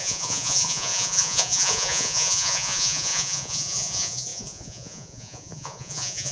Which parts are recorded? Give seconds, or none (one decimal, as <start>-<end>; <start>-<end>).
none